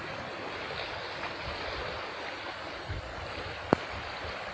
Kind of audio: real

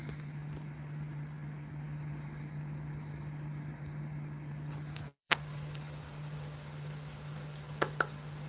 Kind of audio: fake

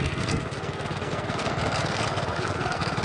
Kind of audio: fake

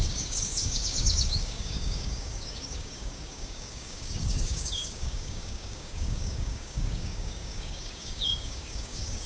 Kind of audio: fake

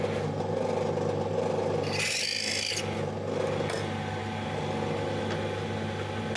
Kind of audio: real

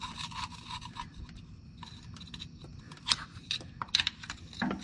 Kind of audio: real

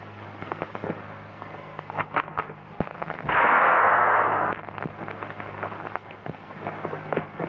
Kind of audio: fake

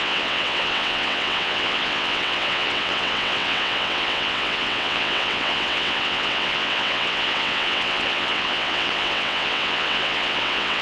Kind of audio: fake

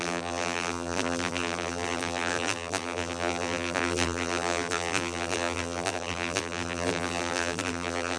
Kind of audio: fake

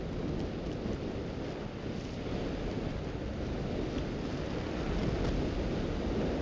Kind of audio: real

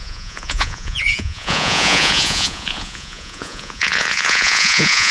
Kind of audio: fake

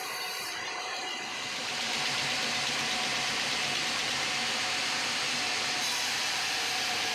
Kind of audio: fake